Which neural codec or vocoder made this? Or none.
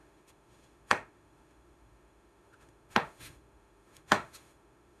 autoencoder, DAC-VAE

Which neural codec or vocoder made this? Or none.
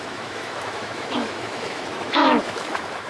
autoencoder, DAC-VAE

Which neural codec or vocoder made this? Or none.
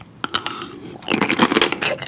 none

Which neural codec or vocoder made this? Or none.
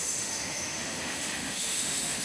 autoencoder, DAC-VAE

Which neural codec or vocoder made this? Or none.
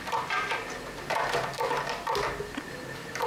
none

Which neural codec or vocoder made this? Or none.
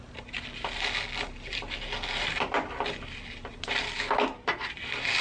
none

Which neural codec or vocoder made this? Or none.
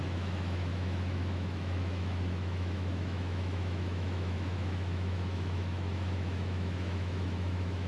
autoencoder, DAC-VAE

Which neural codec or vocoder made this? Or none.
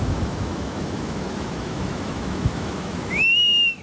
autoencoder, DAC-VAE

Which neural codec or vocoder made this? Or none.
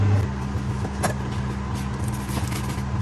none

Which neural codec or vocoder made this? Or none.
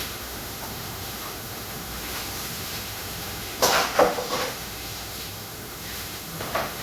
autoencoder, DAC-VAE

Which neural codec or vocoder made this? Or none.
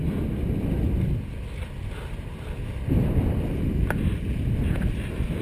none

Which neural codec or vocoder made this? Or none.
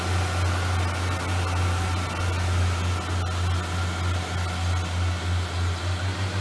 none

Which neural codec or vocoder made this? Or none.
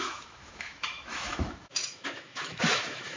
autoencoder, DAC-VAE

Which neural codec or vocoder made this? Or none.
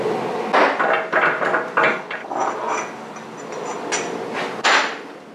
none